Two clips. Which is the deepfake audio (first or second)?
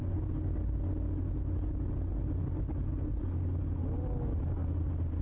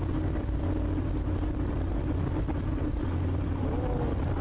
second